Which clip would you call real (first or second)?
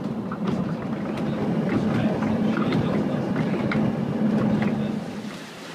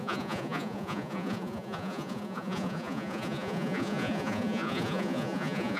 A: first